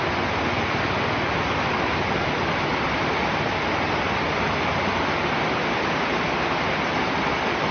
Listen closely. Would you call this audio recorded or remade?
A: recorded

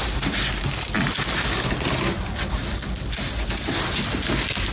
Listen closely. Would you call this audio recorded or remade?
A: recorded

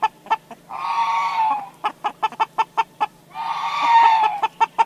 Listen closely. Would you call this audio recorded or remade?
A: remade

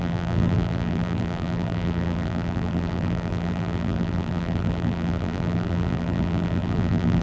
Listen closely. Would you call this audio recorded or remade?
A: remade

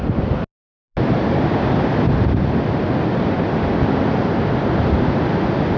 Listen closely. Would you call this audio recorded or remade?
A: recorded